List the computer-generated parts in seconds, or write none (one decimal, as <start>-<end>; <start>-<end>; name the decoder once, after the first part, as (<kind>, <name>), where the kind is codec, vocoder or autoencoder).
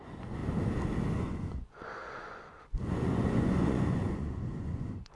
0.0-0.4 (vocoder, Vocos); 1.2-5.2